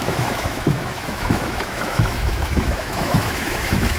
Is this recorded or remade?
remade